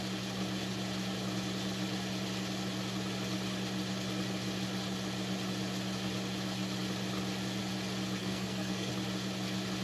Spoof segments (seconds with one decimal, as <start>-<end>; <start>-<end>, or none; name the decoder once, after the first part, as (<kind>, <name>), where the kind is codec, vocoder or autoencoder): 8.2-8.9 (codec, SNAC)